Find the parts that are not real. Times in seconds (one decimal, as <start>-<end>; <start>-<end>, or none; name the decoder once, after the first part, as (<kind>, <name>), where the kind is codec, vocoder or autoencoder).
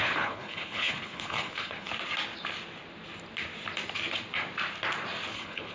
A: 0.0-1.9 (codec, HILCodec); 5.3-5.7